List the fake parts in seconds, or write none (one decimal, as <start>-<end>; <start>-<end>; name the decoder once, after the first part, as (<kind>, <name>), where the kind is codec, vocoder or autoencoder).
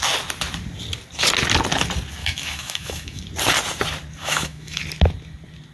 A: 2.2-3.2 (autoencoder, DAC-VAE); 4.2-4.8